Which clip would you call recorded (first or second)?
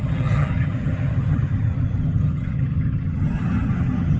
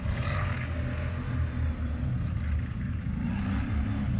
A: second